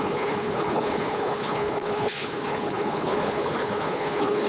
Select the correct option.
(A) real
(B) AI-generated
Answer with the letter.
B